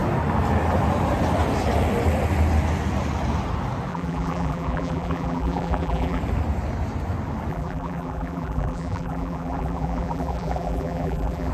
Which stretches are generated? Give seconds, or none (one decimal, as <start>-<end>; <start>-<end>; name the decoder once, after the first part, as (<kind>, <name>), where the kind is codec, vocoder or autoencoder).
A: 3.9-6.2 (vocoder, BigVGAN v2); 7.5-11.5